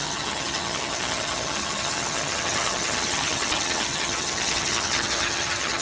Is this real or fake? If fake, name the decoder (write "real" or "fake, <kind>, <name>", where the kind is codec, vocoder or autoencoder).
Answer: fake, vocoder, HiFi-GAN